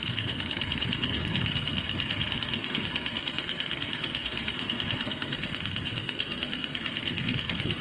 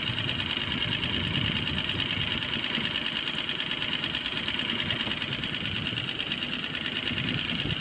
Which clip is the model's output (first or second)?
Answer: first